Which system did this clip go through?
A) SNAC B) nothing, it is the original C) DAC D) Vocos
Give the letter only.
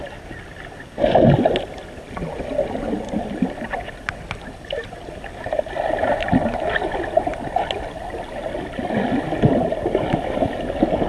B